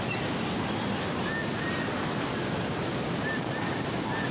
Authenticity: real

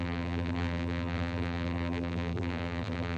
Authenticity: fake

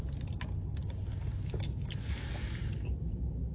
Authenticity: real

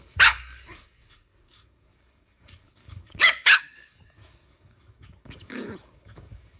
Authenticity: fake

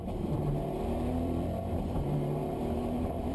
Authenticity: fake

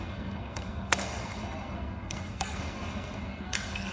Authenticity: fake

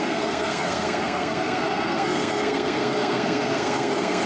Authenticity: fake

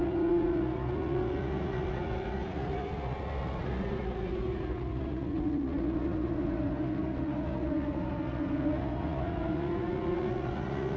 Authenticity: fake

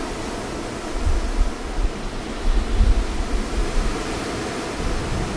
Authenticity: real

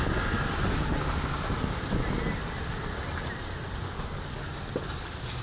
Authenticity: real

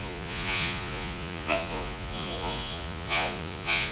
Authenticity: fake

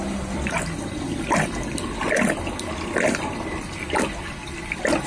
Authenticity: fake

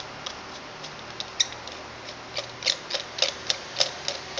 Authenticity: real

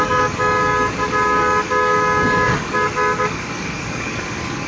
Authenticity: fake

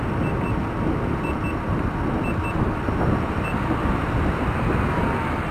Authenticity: real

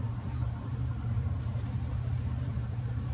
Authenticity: fake